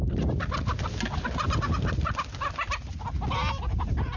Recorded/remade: recorded